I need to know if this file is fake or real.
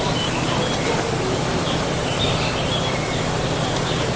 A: fake